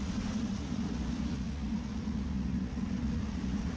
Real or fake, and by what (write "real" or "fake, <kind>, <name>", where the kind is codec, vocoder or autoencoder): fake, vocoder, Vocos